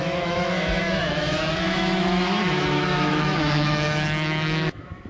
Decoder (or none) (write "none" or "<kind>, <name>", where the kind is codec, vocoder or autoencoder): autoencoder, DAC-VAE